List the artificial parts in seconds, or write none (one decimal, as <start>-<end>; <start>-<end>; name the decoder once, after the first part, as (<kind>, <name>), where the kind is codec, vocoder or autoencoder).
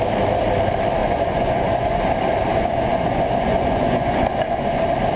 1.0-2.1 (vocoder, Vocos); 2.5-4.8